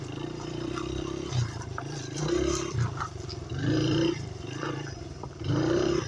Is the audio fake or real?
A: fake